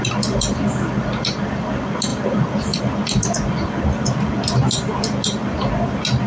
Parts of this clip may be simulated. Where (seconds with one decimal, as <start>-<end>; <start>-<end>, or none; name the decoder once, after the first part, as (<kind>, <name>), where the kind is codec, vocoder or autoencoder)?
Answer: none